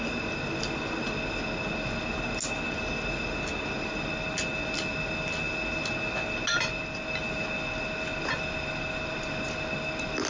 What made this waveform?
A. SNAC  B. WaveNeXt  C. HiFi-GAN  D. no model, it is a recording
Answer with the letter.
D